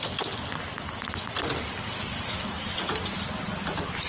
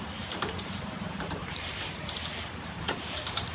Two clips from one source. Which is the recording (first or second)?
first